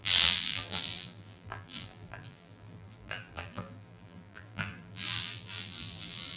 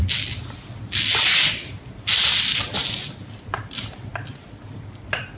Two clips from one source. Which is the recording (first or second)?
second